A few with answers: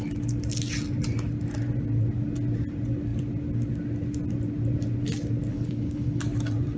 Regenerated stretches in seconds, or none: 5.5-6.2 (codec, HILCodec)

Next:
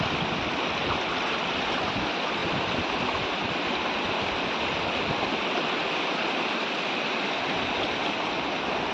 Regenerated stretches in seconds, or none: none

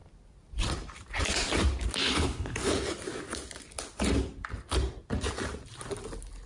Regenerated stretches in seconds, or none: 2.0-2.7 (codec, HILCodec)

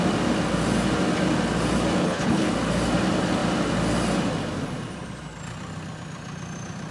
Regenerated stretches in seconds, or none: 2.0-2.5 (codec, HILCodec)

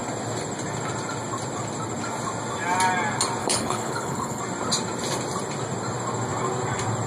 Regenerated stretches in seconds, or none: 3.4-4.4 (codec, HILCodec)